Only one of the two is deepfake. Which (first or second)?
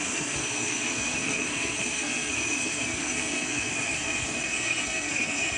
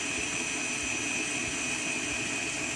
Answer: first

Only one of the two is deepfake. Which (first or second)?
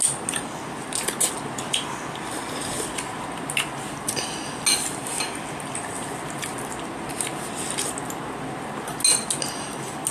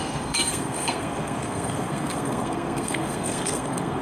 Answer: second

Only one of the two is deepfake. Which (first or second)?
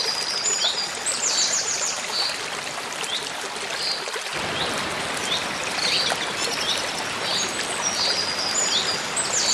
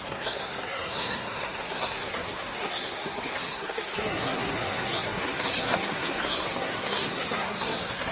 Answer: second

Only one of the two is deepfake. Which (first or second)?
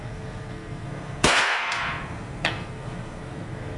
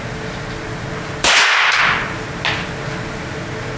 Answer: first